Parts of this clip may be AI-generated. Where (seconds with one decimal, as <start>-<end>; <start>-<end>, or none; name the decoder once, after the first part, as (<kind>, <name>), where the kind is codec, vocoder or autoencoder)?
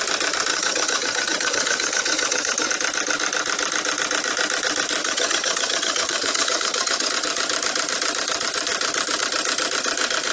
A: 0.5-2.7 (vocoder, HiFi-GAN); 5.0-7.1